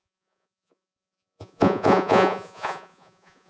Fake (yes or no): yes